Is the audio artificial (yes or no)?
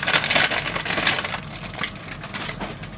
no